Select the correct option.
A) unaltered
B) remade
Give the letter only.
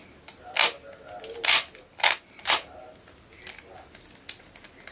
A